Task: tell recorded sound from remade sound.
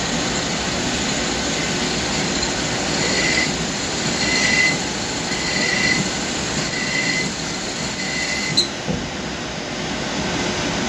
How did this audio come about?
recorded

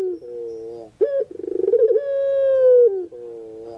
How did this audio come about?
recorded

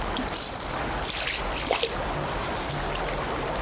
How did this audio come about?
recorded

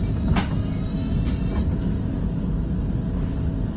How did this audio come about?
recorded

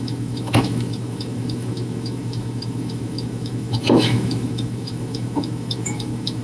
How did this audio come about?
remade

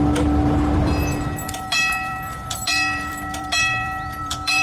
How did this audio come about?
remade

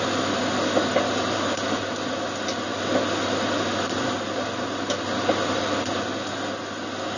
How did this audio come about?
recorded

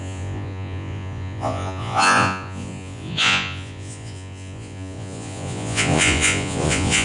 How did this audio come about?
remade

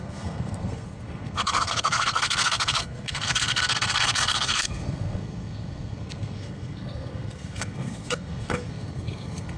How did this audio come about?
remade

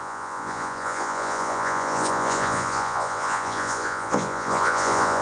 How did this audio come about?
remade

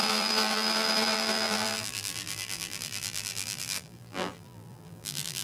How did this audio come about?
remade